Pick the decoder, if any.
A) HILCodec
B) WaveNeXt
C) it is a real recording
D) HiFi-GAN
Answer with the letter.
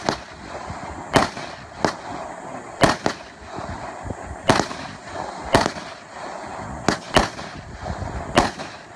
C